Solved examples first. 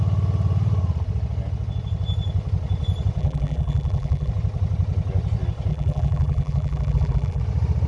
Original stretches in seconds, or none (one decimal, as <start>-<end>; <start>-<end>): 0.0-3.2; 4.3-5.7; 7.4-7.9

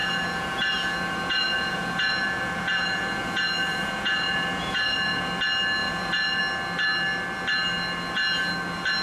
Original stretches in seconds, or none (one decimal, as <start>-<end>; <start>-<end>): 5.3-5.8; 6.4-9.0

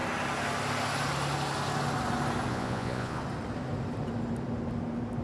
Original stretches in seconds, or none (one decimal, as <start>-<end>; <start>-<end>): 0.0-2.5; 3.2-5.2